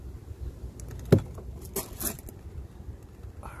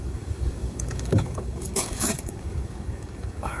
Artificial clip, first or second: second